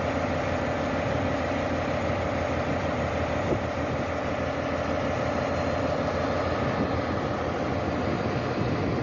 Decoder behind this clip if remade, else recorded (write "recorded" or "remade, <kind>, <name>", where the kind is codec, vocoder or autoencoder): recorded